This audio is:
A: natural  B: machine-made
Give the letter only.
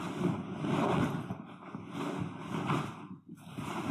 A